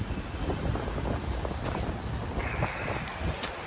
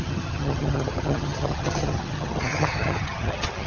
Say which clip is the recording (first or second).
first